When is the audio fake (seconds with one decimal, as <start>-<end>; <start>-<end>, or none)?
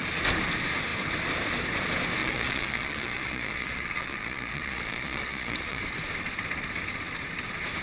2.2-5.8